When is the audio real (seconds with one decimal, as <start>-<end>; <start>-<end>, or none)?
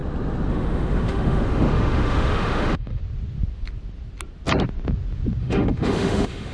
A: 0.0-0.5; 3.0-5.4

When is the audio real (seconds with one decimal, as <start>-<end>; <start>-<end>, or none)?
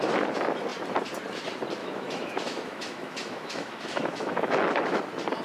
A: 0.0-1.8; 5.0-5.4